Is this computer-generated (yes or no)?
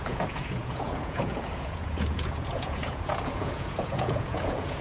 yes